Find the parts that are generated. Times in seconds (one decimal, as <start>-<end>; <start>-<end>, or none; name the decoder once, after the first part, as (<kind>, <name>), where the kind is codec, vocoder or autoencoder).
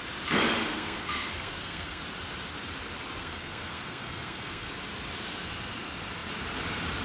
0.6-2.0 (codec, SNAC); 3.2-4.7